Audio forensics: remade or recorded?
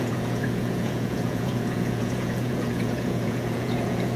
remade